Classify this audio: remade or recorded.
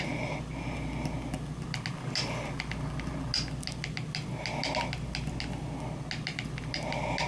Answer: recorded